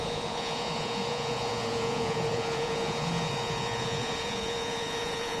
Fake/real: fake